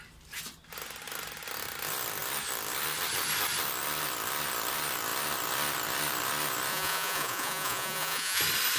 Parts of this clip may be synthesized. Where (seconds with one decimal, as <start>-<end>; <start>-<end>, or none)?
6.7-8.4